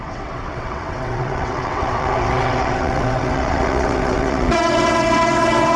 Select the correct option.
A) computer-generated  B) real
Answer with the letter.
A